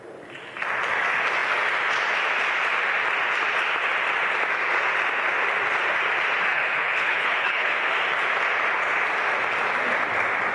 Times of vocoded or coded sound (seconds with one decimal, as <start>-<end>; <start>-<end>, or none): 6.5-7.7